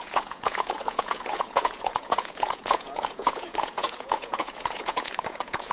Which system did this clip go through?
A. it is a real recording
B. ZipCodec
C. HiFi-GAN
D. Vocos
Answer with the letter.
D